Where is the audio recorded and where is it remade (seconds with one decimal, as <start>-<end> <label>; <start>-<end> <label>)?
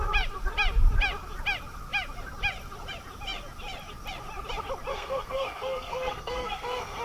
0.0-4.9 recorded; 4.9-7.0 remade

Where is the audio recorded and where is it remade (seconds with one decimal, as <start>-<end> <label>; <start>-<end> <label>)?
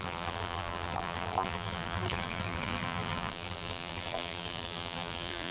0.0-5.5 remade